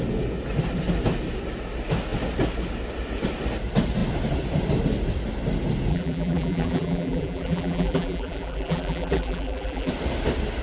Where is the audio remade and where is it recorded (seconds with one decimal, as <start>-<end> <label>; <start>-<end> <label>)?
0.0-5.9 recorded; 5.9-9.9 remade; 9.9-10.6 recorded